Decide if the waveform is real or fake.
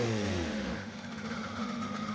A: fake